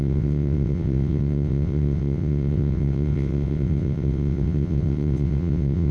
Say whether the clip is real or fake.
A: fake